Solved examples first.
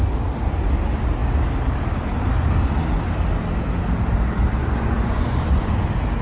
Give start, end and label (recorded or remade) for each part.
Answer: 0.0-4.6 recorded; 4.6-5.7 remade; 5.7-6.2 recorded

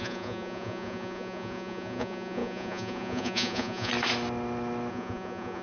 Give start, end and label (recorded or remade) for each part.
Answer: 0.0-3.9 remade; 3.9-4.9 recorded; 4.9-5.6 remade

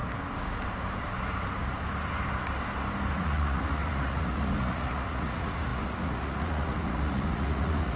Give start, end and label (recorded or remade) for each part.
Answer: 0.0-3.1 recorded; 3.1-8.0 remade